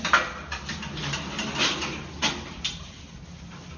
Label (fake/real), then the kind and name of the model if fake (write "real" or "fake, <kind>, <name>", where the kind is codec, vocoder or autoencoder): real